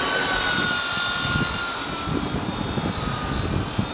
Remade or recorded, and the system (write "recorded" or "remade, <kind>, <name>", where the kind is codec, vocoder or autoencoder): recorded